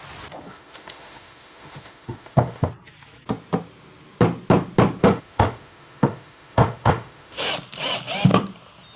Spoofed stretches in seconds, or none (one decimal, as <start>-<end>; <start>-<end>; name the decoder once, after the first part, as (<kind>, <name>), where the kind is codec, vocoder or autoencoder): 0.5-2.7 (autoencoder, DAC-VAE); 5.0-7.5